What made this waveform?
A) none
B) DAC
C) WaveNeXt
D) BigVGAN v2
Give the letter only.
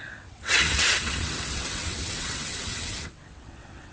C